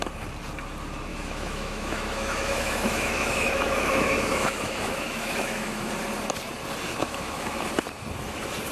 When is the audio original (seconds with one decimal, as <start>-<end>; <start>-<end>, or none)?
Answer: 0.0-1.1; 5.9-7.0; 7.6-8.7